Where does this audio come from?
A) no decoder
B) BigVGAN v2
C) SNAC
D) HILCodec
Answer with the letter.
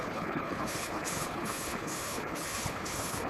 D